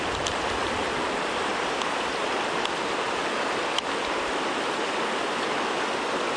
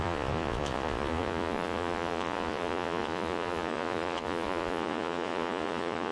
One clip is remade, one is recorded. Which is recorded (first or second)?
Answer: first